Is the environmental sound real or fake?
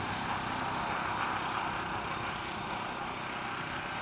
real